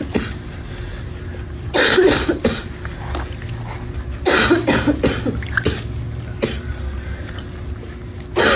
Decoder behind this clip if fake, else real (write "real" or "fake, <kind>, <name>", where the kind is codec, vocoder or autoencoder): real